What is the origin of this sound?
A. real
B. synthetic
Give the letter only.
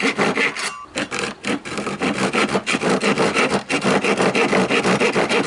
A